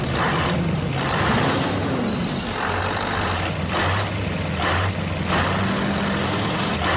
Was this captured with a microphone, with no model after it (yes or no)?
yes